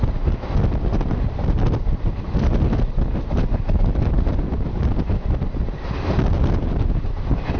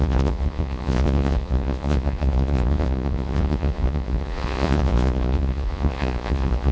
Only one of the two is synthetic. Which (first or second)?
second